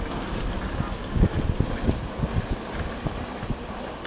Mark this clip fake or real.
real